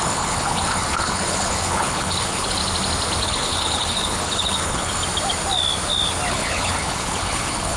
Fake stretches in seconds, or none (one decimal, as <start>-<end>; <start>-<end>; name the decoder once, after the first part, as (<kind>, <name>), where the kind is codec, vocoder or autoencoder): 0.0-2.6 (codec, HILCodec); 3.2-5.0; 6.3-7.8